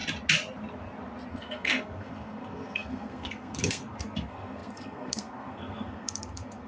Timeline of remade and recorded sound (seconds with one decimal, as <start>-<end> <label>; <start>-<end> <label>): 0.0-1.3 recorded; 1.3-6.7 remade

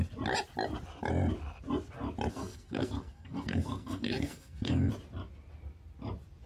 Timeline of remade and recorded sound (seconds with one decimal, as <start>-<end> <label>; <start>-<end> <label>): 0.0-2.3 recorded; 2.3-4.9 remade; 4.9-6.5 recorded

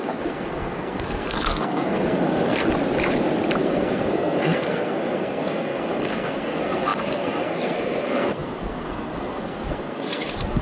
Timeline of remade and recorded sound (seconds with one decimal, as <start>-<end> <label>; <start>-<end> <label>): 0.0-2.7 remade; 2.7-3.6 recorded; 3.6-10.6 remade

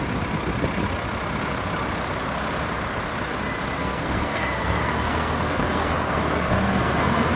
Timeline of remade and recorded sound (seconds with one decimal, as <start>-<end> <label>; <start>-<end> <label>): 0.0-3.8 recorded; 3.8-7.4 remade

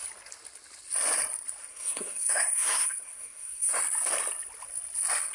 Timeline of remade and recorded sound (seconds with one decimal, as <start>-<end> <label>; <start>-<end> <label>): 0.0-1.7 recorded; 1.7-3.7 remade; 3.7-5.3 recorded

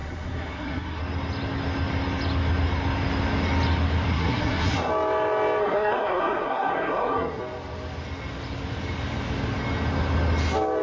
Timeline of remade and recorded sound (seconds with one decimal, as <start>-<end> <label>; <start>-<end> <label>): 0.0-1.0 remade; 1.0-4.1 recorded; 4.1-4.9 remade; 4.9-5.6 recorded; 5.6-7.4 remade; 7.4-10.8 recorded